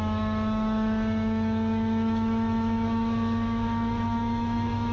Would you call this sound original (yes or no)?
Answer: no